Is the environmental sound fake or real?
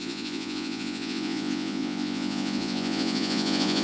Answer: fake